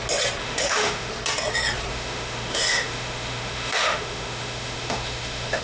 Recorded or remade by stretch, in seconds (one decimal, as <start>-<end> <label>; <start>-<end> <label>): 0.0-0.4 recorded; 0.4-1.1 remade; 1.1-1.9 recorded; 1.9-5.6 remade